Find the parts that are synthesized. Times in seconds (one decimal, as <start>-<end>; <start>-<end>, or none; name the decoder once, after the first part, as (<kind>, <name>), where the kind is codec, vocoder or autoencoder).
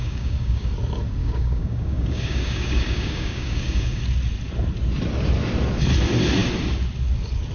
0.0-0.7 (codec, DAC); 1.2-4.0